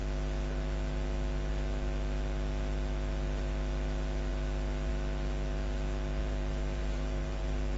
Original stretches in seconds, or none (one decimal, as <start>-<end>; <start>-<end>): 0.0-6.2